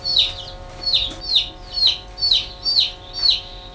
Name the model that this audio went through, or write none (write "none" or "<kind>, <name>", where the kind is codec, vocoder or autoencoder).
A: vocoder, BigVGAN v2